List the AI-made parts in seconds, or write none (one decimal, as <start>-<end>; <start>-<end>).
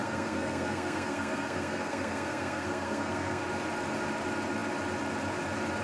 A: 0.0-3.4